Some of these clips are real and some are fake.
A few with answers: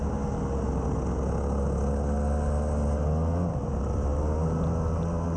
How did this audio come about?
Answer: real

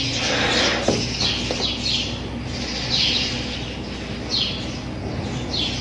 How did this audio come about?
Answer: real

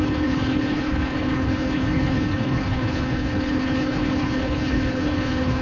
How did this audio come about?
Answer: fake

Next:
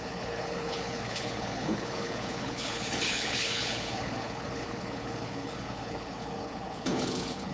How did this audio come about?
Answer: fake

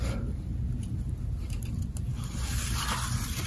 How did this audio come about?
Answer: real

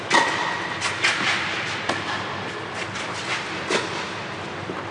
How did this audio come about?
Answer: real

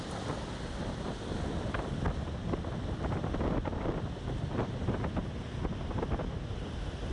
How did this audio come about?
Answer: real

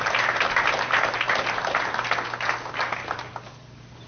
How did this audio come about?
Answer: real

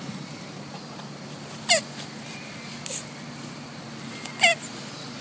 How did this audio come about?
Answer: real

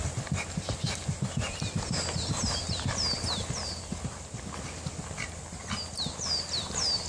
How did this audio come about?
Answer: real